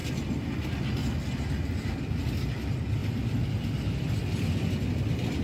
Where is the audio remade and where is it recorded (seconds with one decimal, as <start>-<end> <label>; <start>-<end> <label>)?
0.0-5.4 recorded